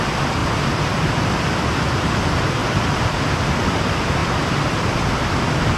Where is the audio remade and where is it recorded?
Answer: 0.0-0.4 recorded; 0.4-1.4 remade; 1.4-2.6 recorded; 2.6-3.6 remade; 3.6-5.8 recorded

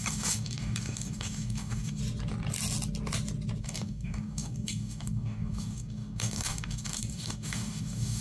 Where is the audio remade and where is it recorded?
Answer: 0.0-2.0 remade; 2.0-3.6 recorded; 3.6-8.2 remade

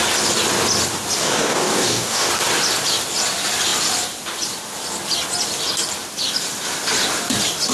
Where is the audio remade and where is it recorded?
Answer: 0.0-1.2 recorded; 1.2-2.3 remade; 2.3-7.7 recorded

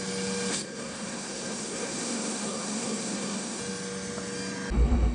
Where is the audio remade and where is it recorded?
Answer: 0.0-0.5 recorded; 0.5-3.6 remade; 3.6-5.1 recorded

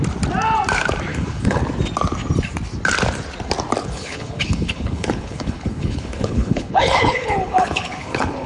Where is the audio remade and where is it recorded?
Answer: 0.0-1.1 recorded; 1.1-1.6 remade; 1.6-3.8 recorded; 3.8-8.5 remade

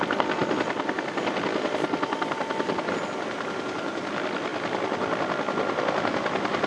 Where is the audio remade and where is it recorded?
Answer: 0.0-6.7 recorded

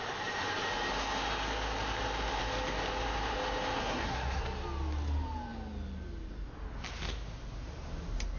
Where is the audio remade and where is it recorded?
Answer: 0.0-3.8 recorded; 3.8-4.4 remade; 4.4-8.4 recorded